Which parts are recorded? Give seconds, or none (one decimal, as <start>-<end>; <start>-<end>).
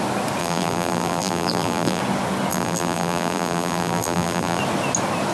0.0-0.4; 2.0-2.5; 4.6-5.3